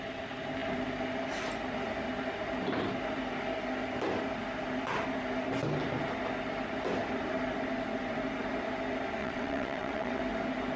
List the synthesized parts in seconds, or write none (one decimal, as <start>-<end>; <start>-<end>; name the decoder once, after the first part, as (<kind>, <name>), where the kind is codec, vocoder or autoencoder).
9.2-10.2 (vocoder, WaveNeXt)